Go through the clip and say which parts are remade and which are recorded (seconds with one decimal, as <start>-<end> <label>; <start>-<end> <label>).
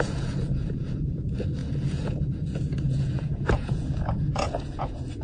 0.0-5.2 remade